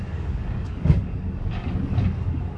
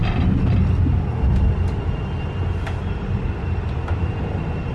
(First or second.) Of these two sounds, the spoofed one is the first